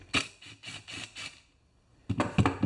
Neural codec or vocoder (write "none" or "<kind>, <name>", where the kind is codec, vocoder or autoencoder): none